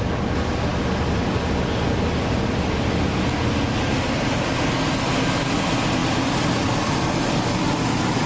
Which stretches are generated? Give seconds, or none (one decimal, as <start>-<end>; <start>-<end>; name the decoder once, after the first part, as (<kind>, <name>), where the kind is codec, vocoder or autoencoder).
none